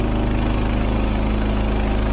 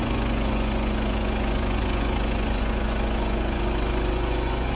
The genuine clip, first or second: first